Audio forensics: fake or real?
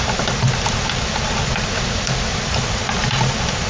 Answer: fake